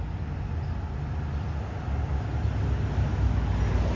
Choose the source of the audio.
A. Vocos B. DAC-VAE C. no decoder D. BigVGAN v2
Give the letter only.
C